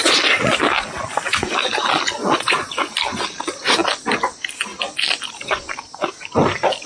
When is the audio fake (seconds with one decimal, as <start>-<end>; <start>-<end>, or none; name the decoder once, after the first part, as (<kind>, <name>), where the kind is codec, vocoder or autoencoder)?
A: 2.2-2.9 (vocoder, Vocos)